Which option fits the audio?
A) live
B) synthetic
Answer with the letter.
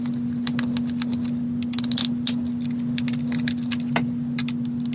A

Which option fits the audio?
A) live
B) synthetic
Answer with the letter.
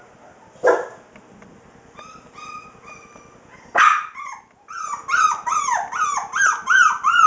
A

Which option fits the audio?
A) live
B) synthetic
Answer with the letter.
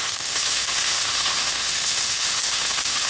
B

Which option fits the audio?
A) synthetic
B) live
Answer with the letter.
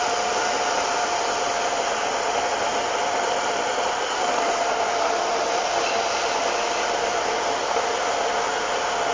B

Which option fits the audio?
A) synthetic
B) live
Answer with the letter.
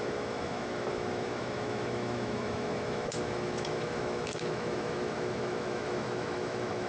A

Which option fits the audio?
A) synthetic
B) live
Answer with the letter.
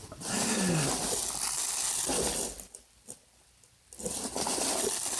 B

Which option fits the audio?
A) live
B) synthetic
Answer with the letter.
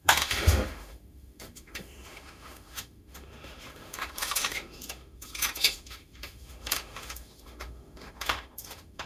B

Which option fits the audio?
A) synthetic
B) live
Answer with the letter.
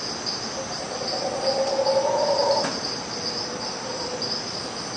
B